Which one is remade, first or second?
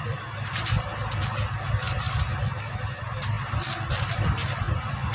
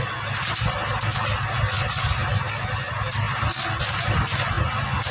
first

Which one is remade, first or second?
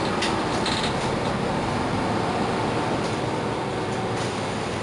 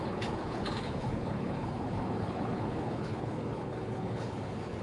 second